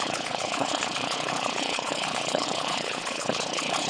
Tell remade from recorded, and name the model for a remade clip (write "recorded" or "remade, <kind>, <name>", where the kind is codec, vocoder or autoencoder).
remade, codec, HILCodec